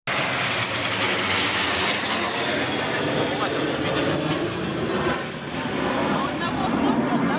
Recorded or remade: recorded